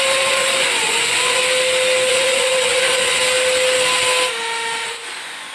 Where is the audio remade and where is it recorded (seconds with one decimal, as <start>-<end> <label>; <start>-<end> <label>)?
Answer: 0.0-1.4 remade; 1.4-2.1 recorded; 2.1-3.2 remade; 3.2-4.9 recorded; 4.9-5.5 remade